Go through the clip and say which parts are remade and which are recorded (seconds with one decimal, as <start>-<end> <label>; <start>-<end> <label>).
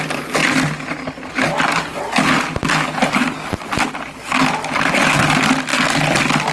0.0-6.5 recorded